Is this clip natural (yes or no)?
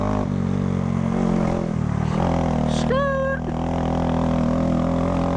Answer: yes